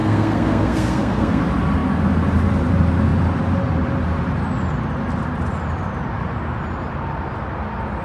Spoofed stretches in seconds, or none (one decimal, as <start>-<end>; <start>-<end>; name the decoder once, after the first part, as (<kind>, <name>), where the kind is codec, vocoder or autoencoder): 0.0-1.4 (codec, SNAC)